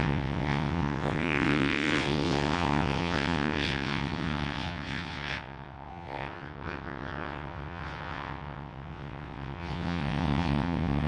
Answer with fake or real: fake